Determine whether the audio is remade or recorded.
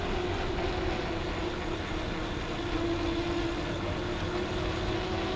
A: recorded